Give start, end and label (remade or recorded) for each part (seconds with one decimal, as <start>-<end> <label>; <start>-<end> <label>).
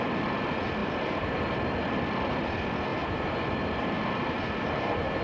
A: 0.0-0.8 recorded; 0.8-1.3 remade; 1.3-2.9 recorded; 2.9-5.2 remade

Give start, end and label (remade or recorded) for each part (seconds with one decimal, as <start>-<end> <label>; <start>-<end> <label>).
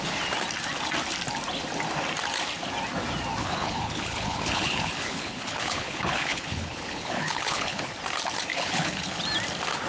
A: 0.0-3.4 recorded; 3.4-7.9 remade; 7.9-8.5 recorded; 8.5-9.2 remade; 9.2-9.9 recorded